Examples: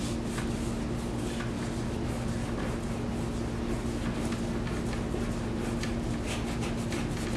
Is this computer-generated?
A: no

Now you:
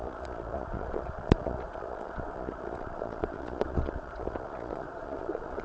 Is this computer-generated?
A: yes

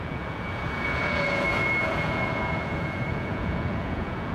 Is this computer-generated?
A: yes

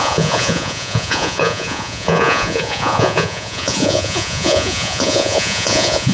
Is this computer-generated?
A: yes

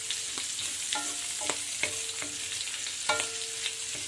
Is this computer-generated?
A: no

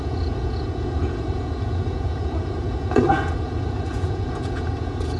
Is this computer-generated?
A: yes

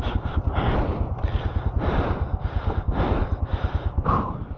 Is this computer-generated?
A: no